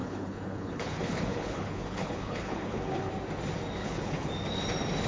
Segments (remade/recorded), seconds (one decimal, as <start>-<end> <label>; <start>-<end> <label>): 0.0-3.1 remade; 3.1-3.8 recorded; 3.8-4.3 remade; 4.3-5.1 recorded